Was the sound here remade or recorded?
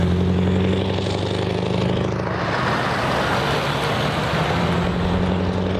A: recorded